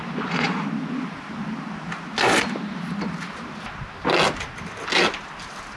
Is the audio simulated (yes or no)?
no